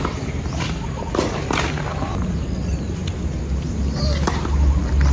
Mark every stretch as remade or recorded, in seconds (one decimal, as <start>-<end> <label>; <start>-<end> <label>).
0.0-5.1 recorded